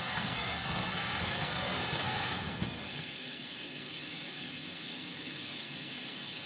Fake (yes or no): yes